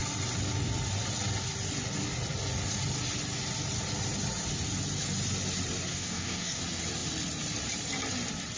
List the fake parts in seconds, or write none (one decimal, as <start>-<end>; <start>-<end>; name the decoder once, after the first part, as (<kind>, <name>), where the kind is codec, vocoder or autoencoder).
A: 5.9-6.6 (codec, DAC)